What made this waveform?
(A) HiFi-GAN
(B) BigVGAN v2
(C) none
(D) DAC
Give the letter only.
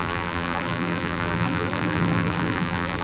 B